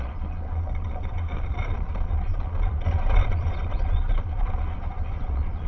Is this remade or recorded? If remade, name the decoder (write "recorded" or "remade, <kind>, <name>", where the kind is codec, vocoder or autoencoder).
remade, vocoder, Vocos